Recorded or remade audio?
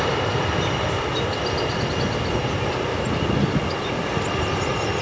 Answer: recorded